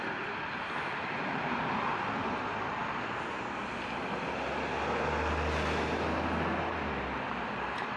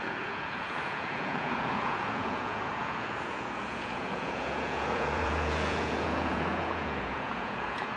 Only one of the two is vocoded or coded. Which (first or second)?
second